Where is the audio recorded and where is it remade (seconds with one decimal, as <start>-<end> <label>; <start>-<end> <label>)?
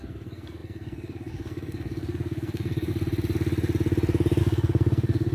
0.0-2.9 remade; 2.9-4.4 recorded; 4.4-5.3 remade